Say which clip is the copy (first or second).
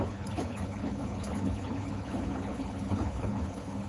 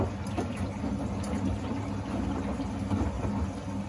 first